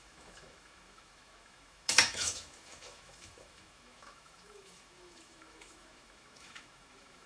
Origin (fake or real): fake